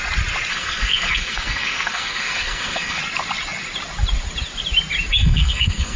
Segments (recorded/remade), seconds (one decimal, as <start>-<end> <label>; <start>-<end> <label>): 0.0-0.5 recorded; 0.5-3.0 remade; 3.0-5.1 recorded; 5.1-6.0 remade

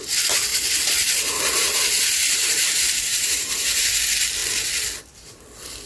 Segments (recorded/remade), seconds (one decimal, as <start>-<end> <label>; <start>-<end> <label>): 0.0-0.5 recorded; 0.5-4.0 remade; 4.0-5.9 recorded

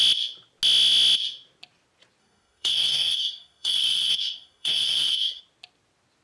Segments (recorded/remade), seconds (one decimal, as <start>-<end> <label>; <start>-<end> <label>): 0.0-2.2 recorded; 2.2-5.4 remade; 5.4-6.2 recorded

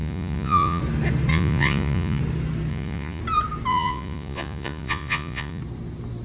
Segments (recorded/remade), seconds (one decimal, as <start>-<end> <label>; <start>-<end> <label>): 0.0-0.8 remade; 0.8-1.3 recorded; 1.3-2.2 remade; 2.2-2.7 recorded; 2.7-3.2 remade; 3.2-3.7 recorded; 3.7-5.6 remade; 5.6-6.2 recorded

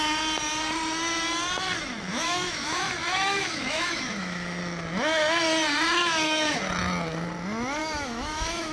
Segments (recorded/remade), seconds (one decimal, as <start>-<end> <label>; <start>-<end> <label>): 0.0-2.1 recorded; 2.1-4.6 remade; 4.6-6.0 recorded; 6.0-6.6 remade; 6.6-7.8 recorded; 7.8-8.7 remade

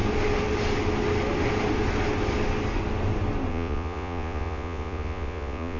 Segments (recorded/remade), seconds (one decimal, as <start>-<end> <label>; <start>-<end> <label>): 0.0-3.5 recorded; 3.5-5.8 remade

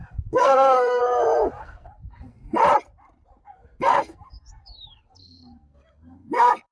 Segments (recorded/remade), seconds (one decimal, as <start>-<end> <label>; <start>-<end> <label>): 0.0-1.0 remade; 1.0-1.6 recorded; 1.6-2.6 remade; 2.6-3.4 recorded; 3.4-6.7 remade